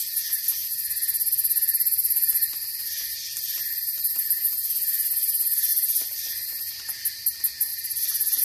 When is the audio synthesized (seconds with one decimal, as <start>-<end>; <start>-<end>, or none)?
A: 7.7-8.4